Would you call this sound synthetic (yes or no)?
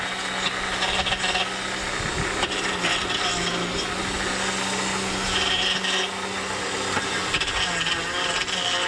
no